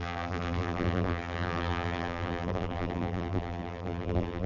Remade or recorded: remade